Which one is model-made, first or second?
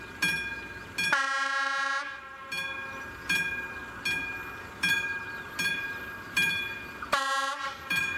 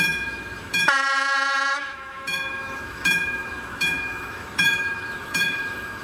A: second